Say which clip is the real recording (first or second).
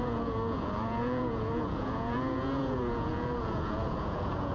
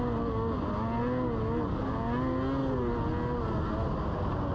second